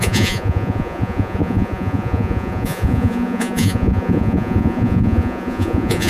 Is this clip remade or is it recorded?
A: remade